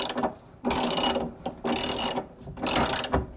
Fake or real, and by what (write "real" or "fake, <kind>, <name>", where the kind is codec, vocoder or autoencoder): real